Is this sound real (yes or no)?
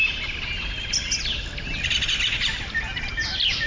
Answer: yes